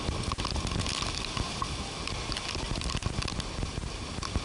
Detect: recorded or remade recorded